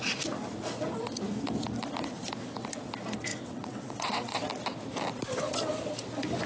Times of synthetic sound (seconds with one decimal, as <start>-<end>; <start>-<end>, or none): 3.3-4.4